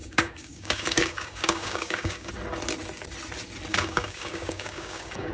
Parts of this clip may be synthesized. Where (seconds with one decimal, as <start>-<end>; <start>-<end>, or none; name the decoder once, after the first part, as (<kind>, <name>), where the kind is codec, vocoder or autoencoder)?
0.0-2.3 (codec, DAC); 3.7-5.3